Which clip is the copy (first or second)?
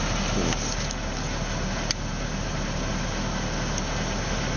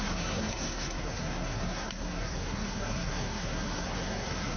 second